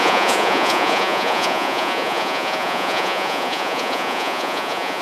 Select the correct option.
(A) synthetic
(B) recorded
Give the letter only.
A